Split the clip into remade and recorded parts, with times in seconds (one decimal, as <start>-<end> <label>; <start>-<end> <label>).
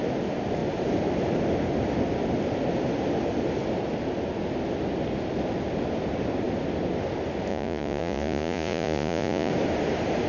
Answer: 0.0-7.5 recorded; 7.5-9.5 remade; 9.5-10.3 recorded